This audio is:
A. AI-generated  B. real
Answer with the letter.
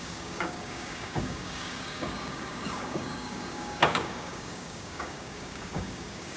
A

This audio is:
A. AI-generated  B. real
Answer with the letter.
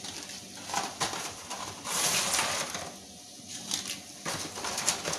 B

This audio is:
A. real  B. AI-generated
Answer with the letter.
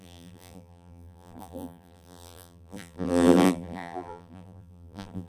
B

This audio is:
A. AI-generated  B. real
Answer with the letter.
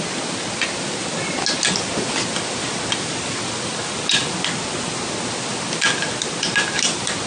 B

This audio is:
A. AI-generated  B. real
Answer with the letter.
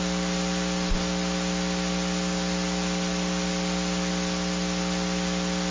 B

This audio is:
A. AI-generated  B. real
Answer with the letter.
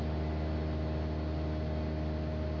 B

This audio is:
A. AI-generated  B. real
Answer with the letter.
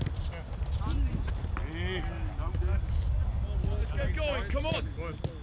B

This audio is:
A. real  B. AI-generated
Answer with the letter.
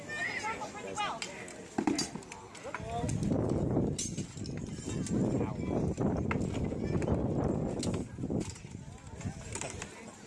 A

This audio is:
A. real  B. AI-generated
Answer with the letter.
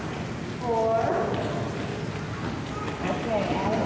A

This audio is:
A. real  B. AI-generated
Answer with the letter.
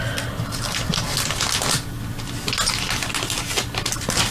A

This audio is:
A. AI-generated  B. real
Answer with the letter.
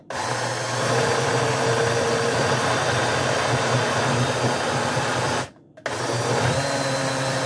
B